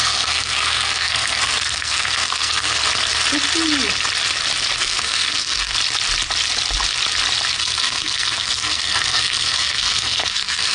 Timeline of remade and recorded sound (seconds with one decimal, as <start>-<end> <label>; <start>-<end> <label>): 0.0-2.8 remade; 2.8-4.8 recorded; 4.8-5.7 remade; 5.7-7.6 recorded; 7.6-10.7 remade